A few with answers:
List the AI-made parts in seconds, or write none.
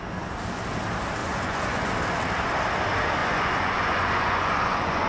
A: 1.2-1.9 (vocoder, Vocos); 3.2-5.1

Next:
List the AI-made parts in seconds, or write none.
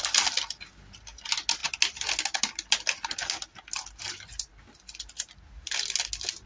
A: none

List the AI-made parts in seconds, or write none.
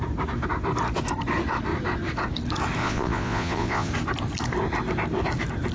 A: 2.8-3.9 (vocoder, Vocos)